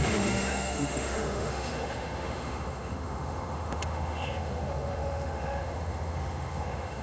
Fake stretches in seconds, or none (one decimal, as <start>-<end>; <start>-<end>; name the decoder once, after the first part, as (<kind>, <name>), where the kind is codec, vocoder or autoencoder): 0.0-7.0 (autoencoder, DAC-VAE)